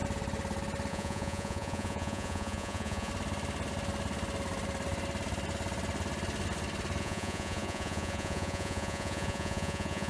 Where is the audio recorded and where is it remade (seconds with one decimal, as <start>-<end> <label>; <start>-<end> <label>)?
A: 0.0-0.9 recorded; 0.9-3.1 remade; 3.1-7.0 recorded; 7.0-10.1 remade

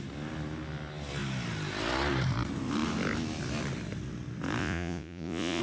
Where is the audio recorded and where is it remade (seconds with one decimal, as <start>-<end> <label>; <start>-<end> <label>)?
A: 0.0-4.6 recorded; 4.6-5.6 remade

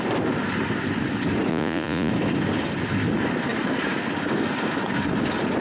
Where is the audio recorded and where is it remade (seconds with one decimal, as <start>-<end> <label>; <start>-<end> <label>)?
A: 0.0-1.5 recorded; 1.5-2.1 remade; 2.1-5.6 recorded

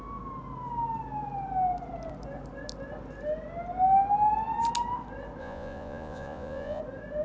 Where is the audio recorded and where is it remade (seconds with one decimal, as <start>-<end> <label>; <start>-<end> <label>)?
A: 0.0-5.4 recorded; 5.4-6.8 remade; 6.8-7.2 recorded

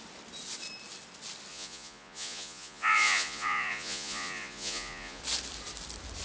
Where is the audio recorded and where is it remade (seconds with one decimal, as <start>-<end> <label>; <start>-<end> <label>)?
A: 0.0-1.5 recorded; 1.5-5.2 remade; 5.2-6.2 recorded

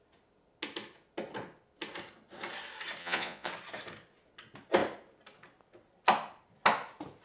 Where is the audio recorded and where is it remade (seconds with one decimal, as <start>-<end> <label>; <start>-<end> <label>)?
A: 0.0-3.0 recorded; 3.0-3.5 remade; 3.5-7.2 recorded